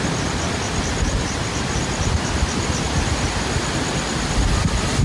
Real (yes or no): yes